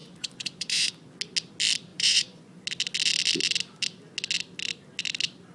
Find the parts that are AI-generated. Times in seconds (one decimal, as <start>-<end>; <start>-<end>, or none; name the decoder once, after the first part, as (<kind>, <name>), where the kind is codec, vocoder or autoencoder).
0.0-0.9 (vocoder, Vocos); 1.9-2.6